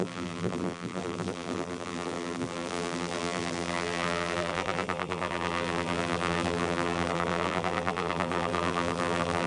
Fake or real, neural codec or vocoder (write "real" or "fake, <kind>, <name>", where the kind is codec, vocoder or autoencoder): fake, vocoder, BigVGAN v2